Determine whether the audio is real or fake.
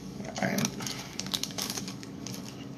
fake